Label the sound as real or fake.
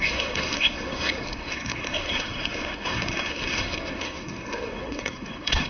fake